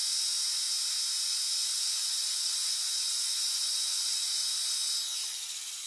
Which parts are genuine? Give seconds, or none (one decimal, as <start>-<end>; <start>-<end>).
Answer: 0.0-1.6; 4.9-5.9